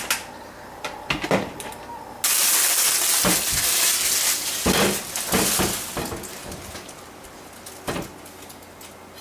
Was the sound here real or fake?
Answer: real